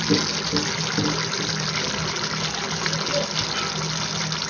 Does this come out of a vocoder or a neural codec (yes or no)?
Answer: no